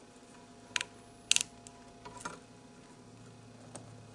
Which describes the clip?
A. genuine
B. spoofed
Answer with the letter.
A